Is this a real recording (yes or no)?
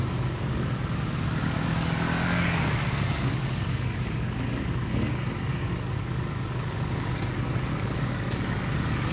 no